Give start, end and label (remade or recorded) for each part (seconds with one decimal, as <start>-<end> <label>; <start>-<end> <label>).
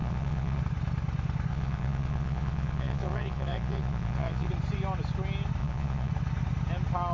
0.0-0.6 remade; 0.6-1.5 recorded; 1.5-4.5 remade; 4.5-5.6 recorded; 5.6-6.1 remade; 6.1-7.1 recorded